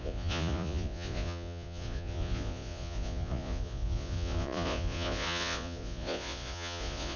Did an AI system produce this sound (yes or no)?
yes